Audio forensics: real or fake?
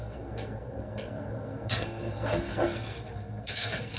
fake